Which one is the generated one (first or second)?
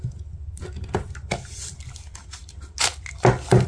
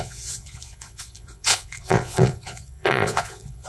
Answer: second